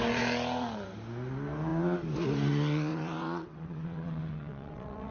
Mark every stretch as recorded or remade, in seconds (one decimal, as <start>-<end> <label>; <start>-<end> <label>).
0.0-2.9 recorded; 2.9-5.1 remade